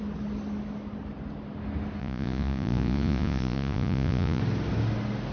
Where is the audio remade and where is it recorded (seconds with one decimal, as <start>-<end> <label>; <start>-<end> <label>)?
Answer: 0.0-2.0 recorded; 2.0-4.4 remade; 4.4-5.3 recorded